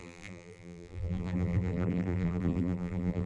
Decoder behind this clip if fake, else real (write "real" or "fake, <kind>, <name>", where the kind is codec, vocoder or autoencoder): fake, vocoder, BigVGAN v2